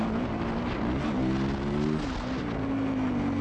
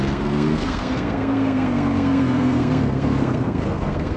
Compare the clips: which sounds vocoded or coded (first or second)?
second